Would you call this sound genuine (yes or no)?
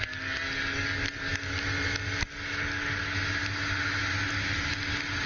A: yes